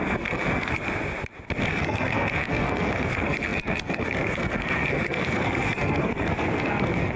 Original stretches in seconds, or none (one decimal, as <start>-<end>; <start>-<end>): 0.8-1.7